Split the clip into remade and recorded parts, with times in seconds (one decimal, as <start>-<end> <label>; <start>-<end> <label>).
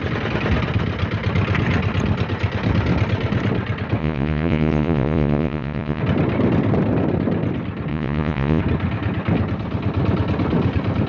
0.0-4.0 recorded; 4.0-6.0 remade; 6.0-7.9 recorded; 7.9-8.6 remade; 8.6-11.1 recorded